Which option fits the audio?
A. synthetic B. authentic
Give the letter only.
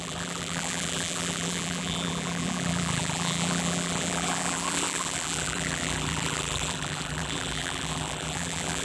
A